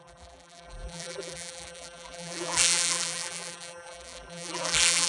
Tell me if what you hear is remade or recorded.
remade